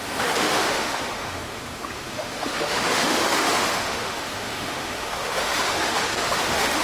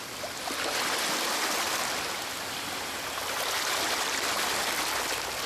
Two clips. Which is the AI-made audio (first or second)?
first